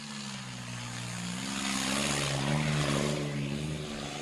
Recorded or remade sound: recorded